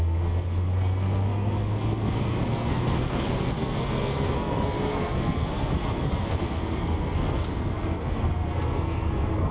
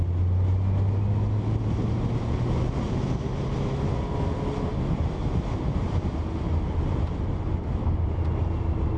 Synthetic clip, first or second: first